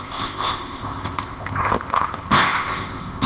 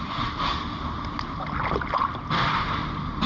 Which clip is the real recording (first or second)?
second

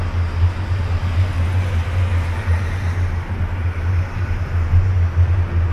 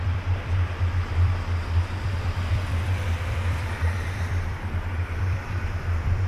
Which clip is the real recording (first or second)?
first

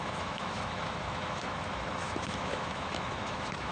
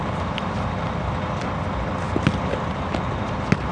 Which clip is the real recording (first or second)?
second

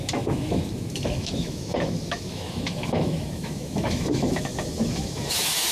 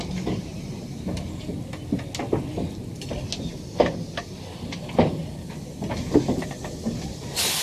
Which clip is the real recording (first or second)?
second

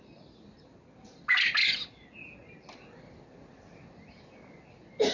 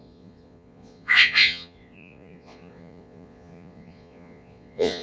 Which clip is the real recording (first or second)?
first